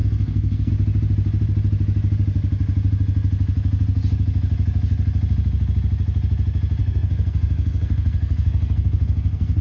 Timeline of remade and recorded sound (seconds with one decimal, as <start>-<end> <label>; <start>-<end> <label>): 0.0-0.7 remade; 0.7-6.8 recorded; 6.8-9.6 remade